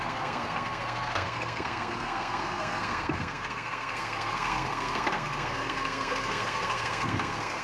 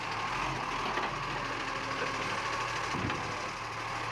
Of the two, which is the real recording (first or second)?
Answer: second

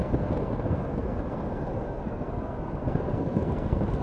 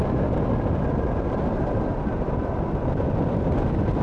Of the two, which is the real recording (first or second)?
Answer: second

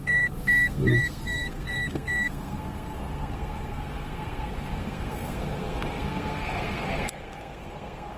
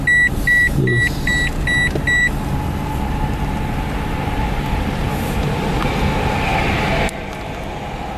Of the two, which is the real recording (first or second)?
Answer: second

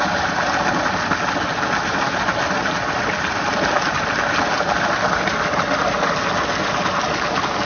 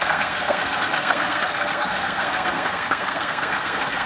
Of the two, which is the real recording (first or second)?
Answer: first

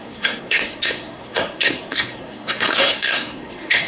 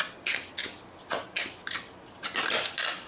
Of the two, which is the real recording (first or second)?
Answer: second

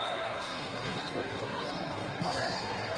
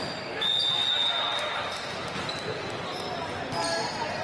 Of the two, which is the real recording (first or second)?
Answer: second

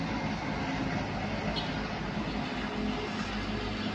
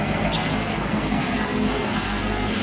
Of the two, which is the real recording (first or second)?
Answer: first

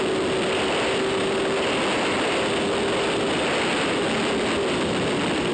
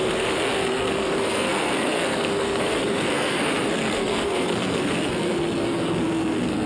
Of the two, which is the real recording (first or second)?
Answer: first